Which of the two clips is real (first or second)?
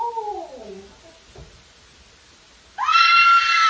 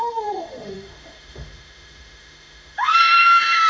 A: first